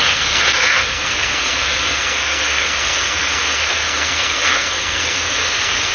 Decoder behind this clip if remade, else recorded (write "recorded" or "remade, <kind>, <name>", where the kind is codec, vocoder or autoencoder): remade, codec, SNAC